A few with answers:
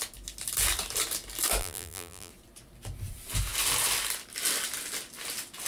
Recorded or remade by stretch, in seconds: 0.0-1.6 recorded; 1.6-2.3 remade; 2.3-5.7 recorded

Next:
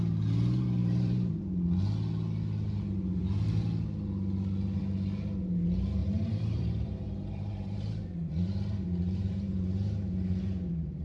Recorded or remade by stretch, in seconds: 0.0-0.8 recorded; 0.8-1.3 remade; 1.3-6.0 recorded; 6.0-11.0 remade

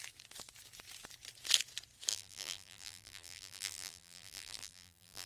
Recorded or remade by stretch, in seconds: 0.0-2.1 recorded; 2.1-5.3 remade